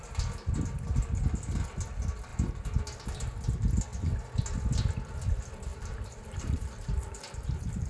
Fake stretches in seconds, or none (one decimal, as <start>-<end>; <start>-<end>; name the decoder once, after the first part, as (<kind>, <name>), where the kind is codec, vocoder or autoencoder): 5.7-7.9 (vocoder, BigVGAN v2)